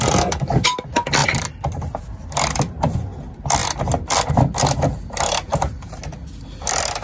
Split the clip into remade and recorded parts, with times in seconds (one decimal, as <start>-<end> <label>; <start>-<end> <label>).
0.0-1.2 recorded; 1.2-2.0 remade; 2.0-5.5 recorded; 5.5-6.1 remade; 6.1-7.0 recorded